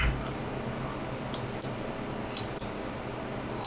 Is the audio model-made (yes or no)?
no